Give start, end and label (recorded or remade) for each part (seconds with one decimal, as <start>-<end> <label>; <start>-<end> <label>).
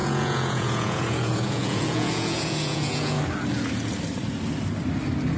0.0-3.2 remade; 3.2-5.4 recorded